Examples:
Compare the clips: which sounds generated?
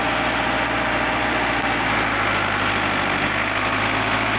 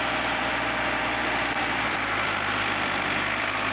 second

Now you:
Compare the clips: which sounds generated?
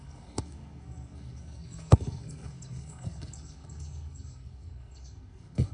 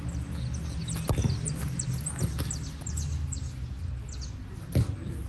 first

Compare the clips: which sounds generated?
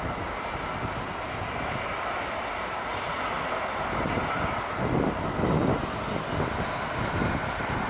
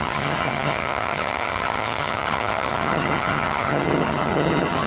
second